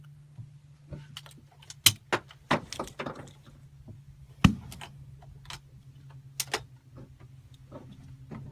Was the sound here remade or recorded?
recorded